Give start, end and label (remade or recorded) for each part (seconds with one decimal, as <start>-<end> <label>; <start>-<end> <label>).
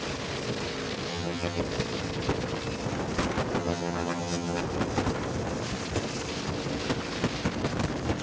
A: 0.0-1.1 recorded; 1.1-1.6 remade; 1.6-3.6 recorded; 3.6-4.6 remade; 4.6-8.2 recorded